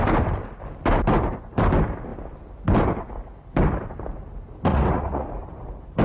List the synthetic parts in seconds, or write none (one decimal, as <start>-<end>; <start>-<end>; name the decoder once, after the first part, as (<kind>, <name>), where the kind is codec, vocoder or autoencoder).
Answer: 4.7-5.5 (vocoder, Vocos)